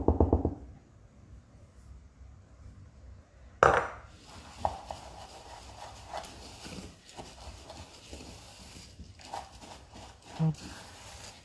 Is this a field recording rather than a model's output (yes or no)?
yes